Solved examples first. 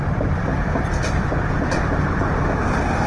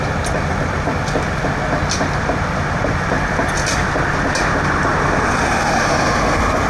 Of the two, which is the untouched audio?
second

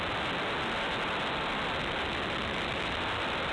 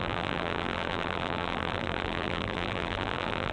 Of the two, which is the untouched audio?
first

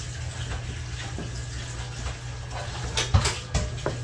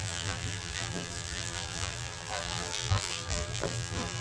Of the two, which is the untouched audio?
first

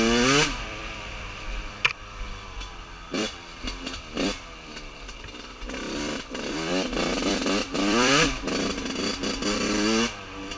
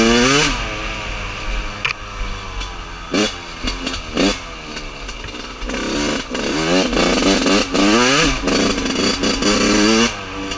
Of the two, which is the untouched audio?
second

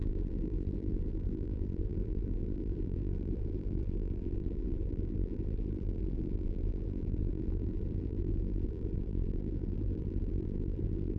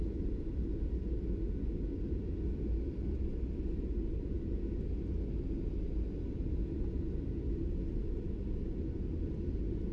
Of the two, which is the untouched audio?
second